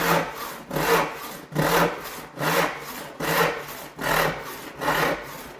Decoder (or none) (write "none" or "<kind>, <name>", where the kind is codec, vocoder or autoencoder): none